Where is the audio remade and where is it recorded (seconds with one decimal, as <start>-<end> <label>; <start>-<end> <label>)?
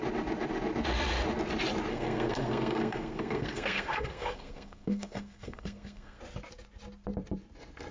0.0-1.9 recorded; 1.9-6.2 remade; 6.2-7.9 recorded